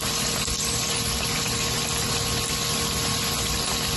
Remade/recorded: recorded